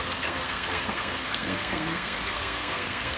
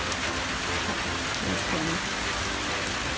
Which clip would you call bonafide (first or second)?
second